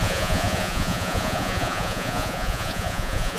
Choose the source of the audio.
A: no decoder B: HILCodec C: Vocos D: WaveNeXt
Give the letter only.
C